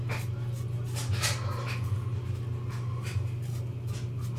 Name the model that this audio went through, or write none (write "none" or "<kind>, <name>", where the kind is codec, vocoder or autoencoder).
none